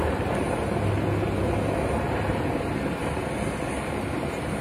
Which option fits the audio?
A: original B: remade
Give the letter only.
A